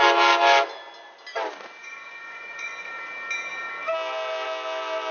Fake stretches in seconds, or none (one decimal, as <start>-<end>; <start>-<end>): 1.8-2.9